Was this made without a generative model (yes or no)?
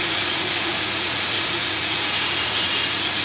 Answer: no